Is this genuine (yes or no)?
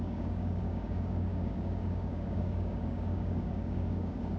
no